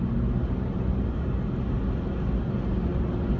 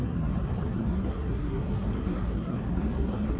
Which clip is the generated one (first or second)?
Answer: second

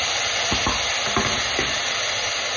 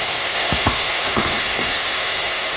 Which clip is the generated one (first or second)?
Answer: second